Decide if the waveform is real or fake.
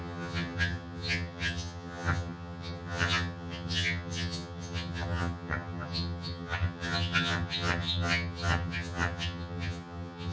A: fake